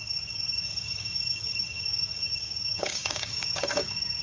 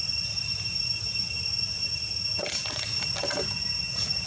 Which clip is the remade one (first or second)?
first